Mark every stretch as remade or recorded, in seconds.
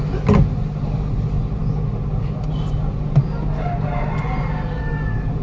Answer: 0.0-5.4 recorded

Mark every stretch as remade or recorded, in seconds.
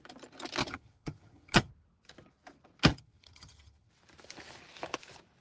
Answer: 0.0-0.6 recorded; 0.6-1.7 remade; 1.7-2.9 recorded; 2.9-3.9 remade; 3.9-5.4 recorded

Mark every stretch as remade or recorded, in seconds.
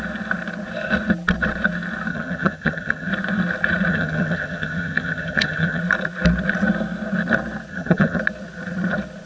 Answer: 0.0-2.1 recorded; 2.1-3.1 remade; 3.1-3.9 recorded; 3.9-5.8 remade; 5.8-7.7 recorded; 7.7-8.2 remade; 8.2-9.3 recorded